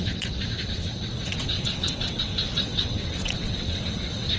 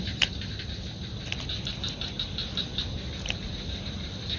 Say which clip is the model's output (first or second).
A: first